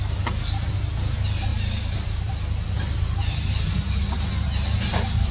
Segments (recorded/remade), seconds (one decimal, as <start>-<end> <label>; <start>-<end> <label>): 0.0-1.5 recorded; 1.5-2.3 remade; 2.3-5.3 recorded